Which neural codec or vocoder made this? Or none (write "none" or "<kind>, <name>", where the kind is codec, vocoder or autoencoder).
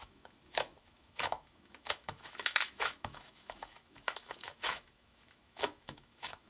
autoencoder, DAC-VAE